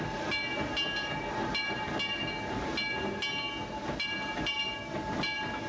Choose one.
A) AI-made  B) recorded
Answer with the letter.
B